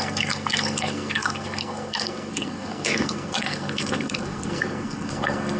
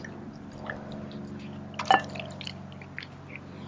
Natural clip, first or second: second